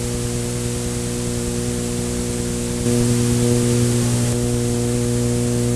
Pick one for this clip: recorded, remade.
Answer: recorded